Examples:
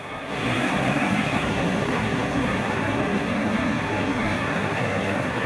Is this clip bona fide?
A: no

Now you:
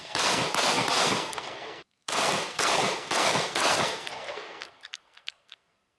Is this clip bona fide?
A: no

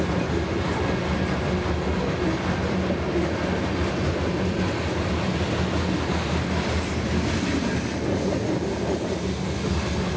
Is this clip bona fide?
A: yes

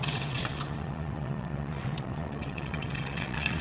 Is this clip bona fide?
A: no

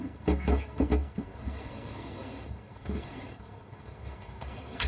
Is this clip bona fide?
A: no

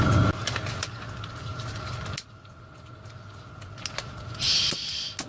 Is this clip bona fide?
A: yes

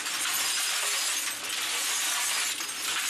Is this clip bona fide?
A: yes